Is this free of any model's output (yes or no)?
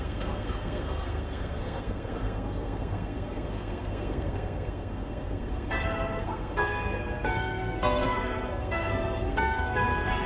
no